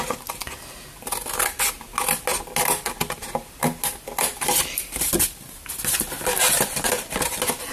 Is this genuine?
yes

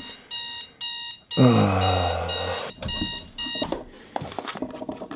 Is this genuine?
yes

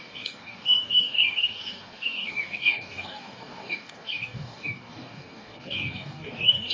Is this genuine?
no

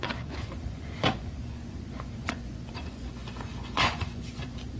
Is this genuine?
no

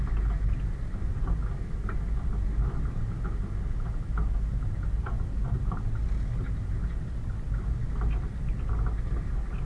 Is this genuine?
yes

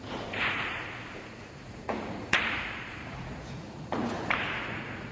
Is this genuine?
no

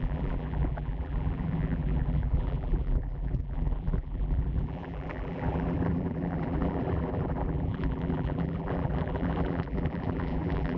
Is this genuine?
no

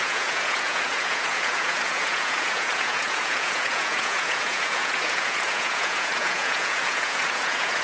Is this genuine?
no